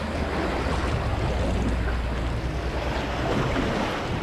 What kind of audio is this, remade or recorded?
recorded